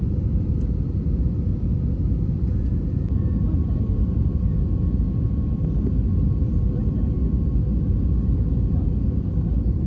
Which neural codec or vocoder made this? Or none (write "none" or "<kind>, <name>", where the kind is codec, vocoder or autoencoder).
none